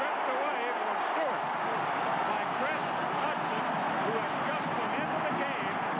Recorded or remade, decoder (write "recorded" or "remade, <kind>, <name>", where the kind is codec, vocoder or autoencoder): recorded